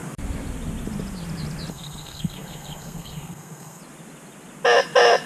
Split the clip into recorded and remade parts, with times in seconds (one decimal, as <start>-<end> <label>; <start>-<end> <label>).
0.0-1.7 recorded; 1.7-3.8 remade; 3.8-5.3 recorded